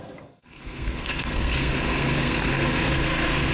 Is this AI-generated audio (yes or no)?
yes